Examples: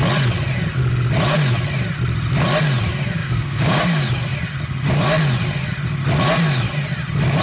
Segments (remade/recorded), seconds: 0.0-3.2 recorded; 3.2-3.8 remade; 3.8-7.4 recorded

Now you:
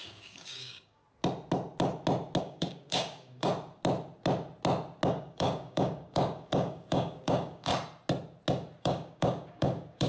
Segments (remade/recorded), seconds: 0.0-1.0 remade; 1.0-2.4 recorded; 2.4-3.5 remade; 3.5-5.1 recorded; 5.1-7.7 remade; 7.7-8.8 recorded; 8.8-10.1 remade

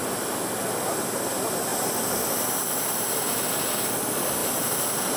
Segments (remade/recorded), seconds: 0.0-5.2 recorded

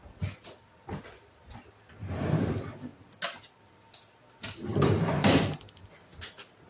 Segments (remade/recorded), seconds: 0.0-6.7 recorded